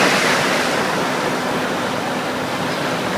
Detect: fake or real real